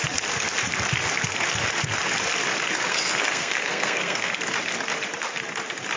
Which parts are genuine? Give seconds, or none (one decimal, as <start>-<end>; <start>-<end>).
0.0-2.9; 4.3-6.0